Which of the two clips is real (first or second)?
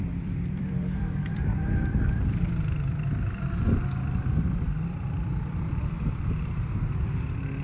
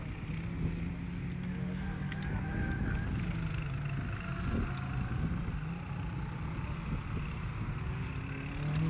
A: second